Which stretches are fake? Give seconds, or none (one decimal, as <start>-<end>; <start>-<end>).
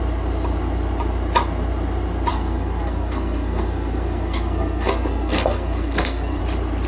2.3-6.4